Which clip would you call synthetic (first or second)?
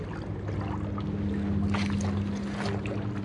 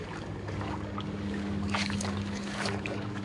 second